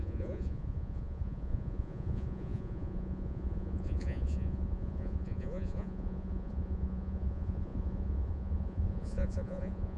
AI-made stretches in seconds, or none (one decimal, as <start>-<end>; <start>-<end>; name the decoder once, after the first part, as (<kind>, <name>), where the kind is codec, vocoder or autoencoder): 0.0-10.0 (vocoder, Vocos)